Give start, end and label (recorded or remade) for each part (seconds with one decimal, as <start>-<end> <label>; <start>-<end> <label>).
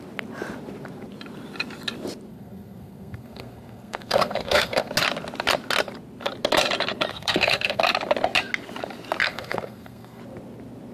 0.0-2.3 recorded; 2.3-4.9 remade; 4.9-7.1 recorded; 7.1-7.8 remade; 7.8-9.2 recorded; 9.2-10.2 remade; 10.2-10.9 recorded